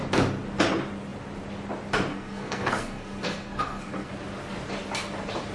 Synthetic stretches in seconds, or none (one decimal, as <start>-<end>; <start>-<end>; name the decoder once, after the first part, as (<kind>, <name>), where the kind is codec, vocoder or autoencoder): 2.1-4.1 (codec, SNAC)